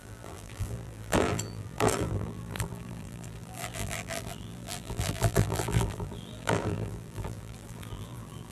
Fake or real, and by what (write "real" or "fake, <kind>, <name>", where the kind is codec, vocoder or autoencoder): fake, vocoder, BigVGAN v2